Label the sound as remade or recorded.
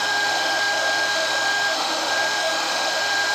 remade